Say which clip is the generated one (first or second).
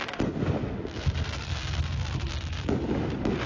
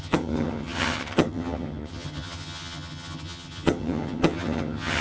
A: second